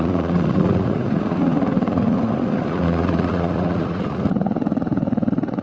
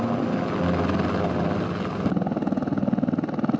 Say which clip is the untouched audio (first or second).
second